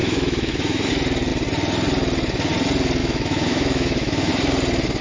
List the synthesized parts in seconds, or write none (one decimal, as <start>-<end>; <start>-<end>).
0.0-0.9; 3.0-4.3